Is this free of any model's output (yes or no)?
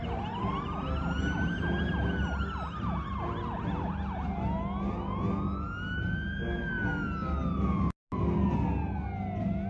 yes